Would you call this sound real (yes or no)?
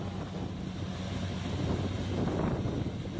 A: yes